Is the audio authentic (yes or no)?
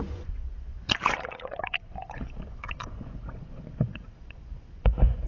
no